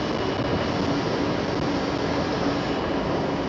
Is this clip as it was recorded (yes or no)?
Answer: yes